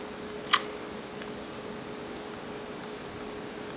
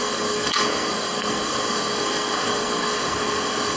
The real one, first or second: first